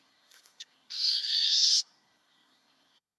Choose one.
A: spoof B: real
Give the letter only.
A